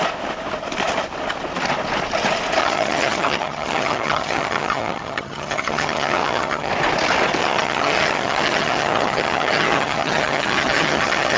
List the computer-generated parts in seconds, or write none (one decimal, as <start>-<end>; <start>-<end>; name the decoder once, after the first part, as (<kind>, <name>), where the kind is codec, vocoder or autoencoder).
2.6-6.7 (vocoder, HiFi-GAN); 7.4-11.4